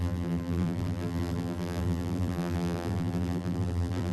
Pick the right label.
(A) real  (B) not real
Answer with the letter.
B